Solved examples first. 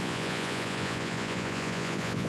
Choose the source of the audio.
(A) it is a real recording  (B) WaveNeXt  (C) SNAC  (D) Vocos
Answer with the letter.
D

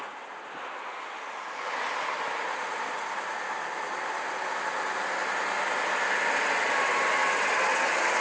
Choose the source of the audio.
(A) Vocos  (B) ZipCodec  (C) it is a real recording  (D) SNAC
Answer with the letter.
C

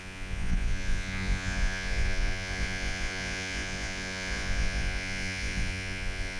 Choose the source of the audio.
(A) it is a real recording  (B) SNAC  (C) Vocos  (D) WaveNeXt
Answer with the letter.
C